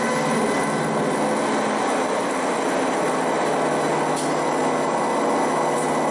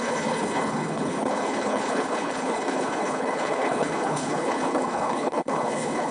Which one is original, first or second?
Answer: first